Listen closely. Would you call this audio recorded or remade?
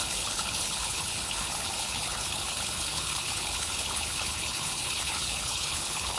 remade